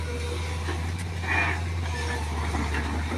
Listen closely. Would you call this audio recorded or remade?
recorded